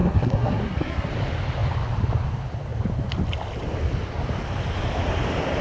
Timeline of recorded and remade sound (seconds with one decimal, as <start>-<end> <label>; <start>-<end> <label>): 0.0-1.1 remade; 1.1-5.6 recorded

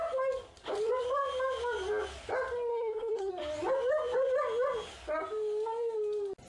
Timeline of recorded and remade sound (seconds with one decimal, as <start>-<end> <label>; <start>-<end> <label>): 0.0-2.7 recorded; 2.7-3.3 remade; 3.3-6.5 recorded

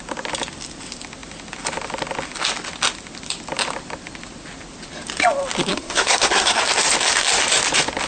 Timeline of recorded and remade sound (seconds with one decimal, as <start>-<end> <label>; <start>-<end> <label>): 0.0-5.7 recorded; 5.7-6.6 remade; 6.6-8.1 recorded

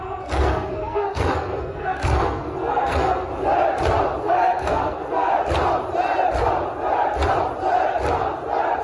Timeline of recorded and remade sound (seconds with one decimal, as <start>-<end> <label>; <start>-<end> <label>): 0.0-3.3 remade; 3.3-4.2 recorded; 4.2-5.3 remade; 5.3-8.8 recorded

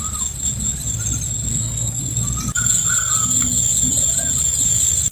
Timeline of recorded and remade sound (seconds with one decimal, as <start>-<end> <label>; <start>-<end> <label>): 0.0-1.5 recorded; 1.5-2.0 remade; 2.0-5.1 recorded

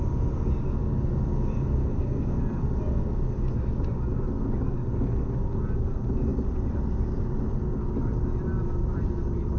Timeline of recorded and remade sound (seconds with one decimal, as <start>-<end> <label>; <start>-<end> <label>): 0.0-1.8 recorded; 1.8-2.4 remade; 2.4-9.6 recorded

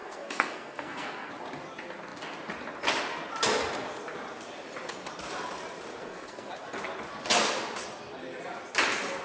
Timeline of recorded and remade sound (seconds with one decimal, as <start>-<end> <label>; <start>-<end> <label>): 0.0-1.3 remade; 1.3-6.0 recorded; 6.0-6.5 remade; 6.5-9.2 recorded